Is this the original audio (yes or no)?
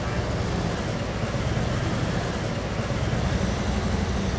yes